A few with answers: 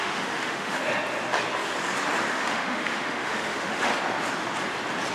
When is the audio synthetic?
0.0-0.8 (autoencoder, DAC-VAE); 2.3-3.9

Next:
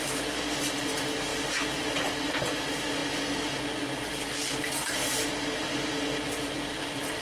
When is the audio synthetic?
none

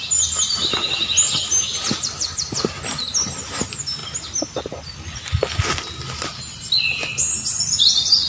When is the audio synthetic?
none

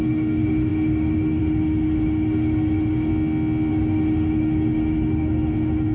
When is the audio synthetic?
0.0-3.1 (autoencoder, DAC-VAE); 3.7-5.9